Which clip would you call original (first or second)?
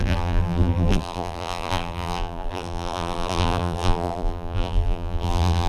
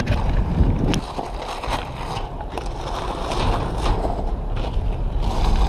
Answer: second